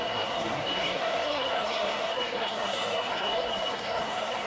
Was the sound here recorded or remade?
remade